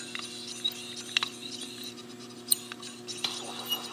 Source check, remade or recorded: recorded